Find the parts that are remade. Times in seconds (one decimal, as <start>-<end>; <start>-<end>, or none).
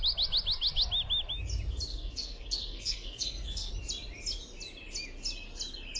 1.9-3.7